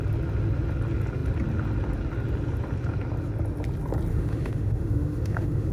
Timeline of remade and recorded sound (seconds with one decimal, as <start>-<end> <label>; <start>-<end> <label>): 0.0-4.1 recorded; 4.1-5.7 remade